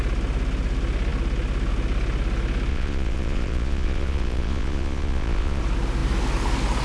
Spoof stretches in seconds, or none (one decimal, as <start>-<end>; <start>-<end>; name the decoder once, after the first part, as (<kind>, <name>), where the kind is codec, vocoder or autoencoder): 2.7-5.6 (vocoder, Vocos)

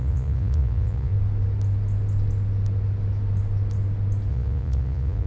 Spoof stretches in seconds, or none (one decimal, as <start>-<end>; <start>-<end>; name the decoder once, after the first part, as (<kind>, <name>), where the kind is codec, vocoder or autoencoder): 0.0-1.1 (vocoder, Vocos); 4.3-5.3

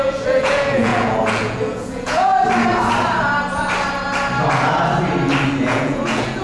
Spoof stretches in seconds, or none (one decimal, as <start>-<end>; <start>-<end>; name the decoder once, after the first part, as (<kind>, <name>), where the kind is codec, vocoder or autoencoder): 0.0-2.3 (vocoder, Vocos); 5.6-6.4